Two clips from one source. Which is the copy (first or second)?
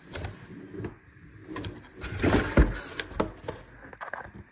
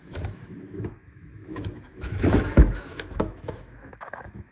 second